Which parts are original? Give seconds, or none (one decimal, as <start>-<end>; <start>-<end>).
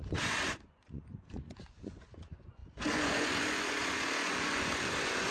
none